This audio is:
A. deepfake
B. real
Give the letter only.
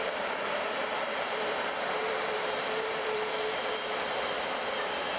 A